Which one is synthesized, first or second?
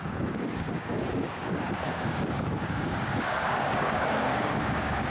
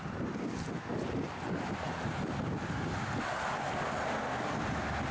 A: first